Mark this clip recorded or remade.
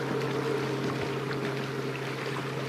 recorded